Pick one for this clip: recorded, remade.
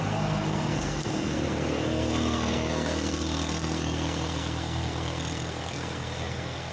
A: remade